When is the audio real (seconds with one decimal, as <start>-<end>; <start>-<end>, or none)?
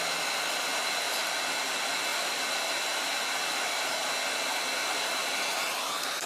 0.0-6.3